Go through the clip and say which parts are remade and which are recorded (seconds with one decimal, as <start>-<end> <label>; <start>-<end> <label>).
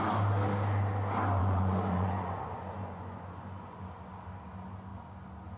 0.0-1.4 recorded; 1.4-3.8 remade; 3.8-5.6 recorded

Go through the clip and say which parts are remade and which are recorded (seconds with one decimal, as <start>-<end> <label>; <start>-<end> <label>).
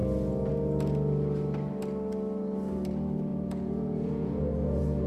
0.0-3.3 recorded; 3.3-5.1 remade